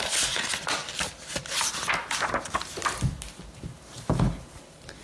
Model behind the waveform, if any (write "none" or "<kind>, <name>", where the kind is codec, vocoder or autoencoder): none